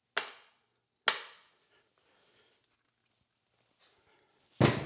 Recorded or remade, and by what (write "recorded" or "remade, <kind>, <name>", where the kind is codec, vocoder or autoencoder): recorded